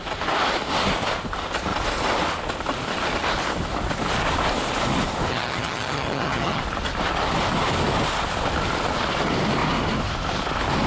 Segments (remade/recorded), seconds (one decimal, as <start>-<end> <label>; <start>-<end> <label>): 0.0-5.3 recorded; 5.3-6.6 remade; 6.6-10.9 recorded